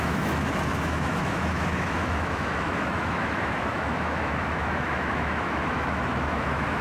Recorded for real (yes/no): no